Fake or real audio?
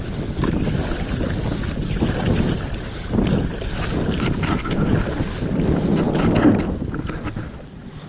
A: real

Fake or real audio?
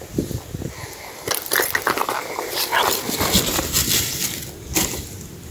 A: real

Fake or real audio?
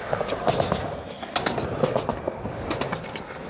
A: real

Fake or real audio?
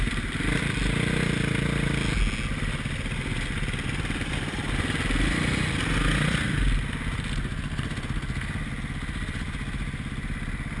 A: real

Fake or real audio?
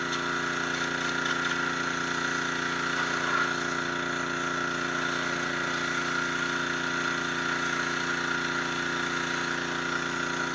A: real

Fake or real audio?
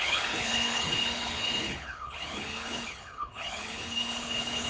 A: fake